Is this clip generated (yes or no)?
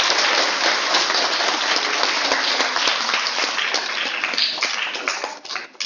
no